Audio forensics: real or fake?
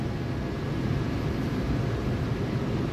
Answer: real